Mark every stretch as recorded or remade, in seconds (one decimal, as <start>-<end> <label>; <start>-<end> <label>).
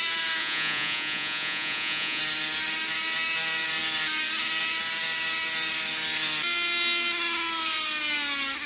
0.0-0.4 recorded; 0.4-2.2 remade; 2.2-8.7 recorded